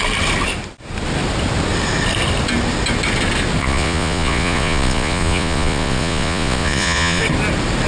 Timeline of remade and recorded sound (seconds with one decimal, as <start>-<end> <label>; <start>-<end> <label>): 0.0-3.6 recorded; 3.6-7.2 remade; 7.2-7.9 recorded